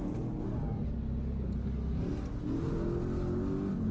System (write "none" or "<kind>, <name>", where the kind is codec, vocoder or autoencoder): none